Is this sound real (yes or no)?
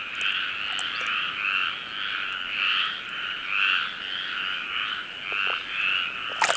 yes